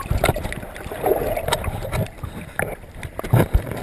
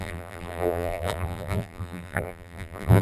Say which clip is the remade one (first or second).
second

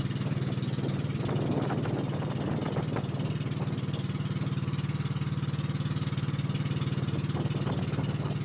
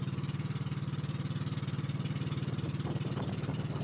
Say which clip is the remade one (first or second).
second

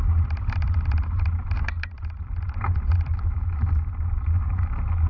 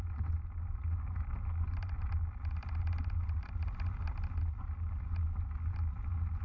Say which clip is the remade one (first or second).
first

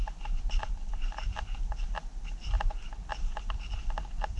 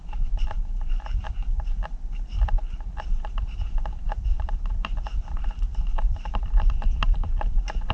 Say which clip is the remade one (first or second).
second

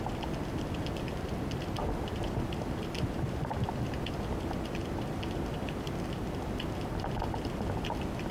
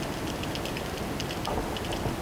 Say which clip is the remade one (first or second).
first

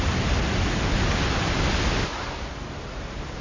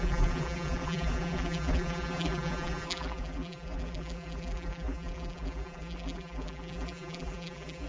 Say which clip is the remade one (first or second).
second